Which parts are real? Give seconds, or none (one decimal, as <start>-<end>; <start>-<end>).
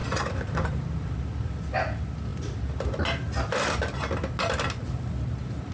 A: 1.0-5.7